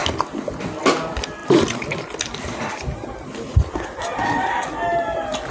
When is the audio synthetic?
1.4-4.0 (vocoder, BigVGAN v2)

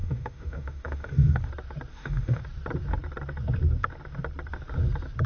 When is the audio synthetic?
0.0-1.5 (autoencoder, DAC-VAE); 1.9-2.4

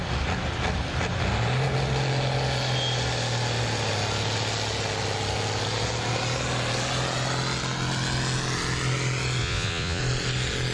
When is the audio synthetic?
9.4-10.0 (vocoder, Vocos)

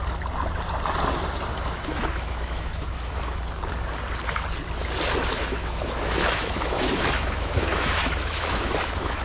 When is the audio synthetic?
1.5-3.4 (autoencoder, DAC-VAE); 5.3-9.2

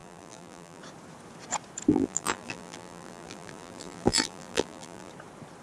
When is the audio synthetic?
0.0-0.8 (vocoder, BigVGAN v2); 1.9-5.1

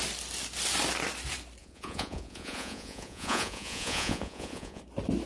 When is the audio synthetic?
1.6-4.8 (vocoder, Vocos)

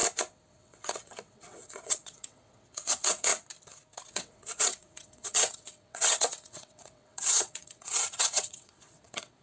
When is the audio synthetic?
0.5-3.3 (vocoder, WaveNeXt); 4.1-9.4